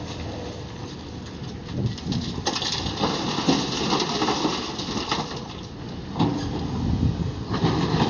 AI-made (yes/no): no